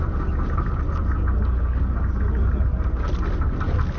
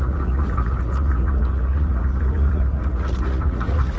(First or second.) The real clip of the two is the first